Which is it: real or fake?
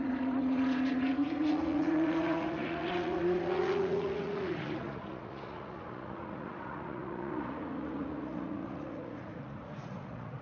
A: fake